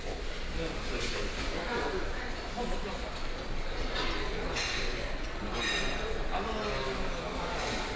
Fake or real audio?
real